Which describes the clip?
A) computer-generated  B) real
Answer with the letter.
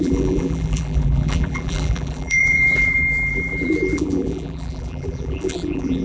A